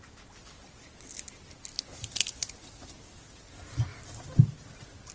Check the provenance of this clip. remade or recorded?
recorded